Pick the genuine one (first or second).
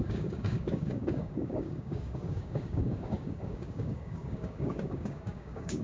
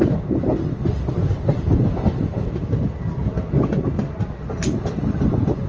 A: second